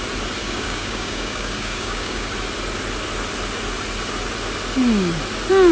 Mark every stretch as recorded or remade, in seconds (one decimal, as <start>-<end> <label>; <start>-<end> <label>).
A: 0.0-0.4 recorded; 0.4-2.3 remade; 2.3-5.7 recorded